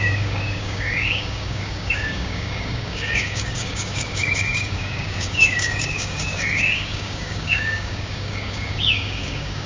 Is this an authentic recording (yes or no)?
no